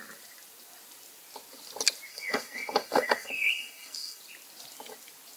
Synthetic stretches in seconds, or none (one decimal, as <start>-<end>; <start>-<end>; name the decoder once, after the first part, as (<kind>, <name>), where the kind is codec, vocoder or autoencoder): 2.1-4.2 (codec, SNAC)